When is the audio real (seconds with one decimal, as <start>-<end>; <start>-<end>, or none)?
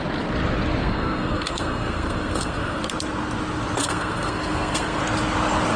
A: 0.0-0.8; 2.8-3.8; 5.0-5.8